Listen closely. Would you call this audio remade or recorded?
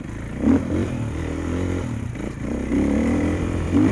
remade